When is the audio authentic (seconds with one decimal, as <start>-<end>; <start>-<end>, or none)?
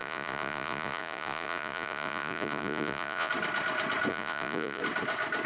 3.3-4.1; 4.8-5.5